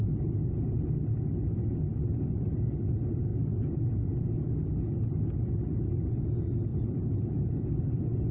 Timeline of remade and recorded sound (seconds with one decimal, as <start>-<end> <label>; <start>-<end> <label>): 0.0-6.7 recorded; 6.7-7.8 remade; 7.8-8.3 recorded